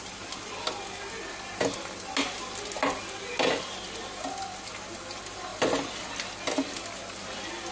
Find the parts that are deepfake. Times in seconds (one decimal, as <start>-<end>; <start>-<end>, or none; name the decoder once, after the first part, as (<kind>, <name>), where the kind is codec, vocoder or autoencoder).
none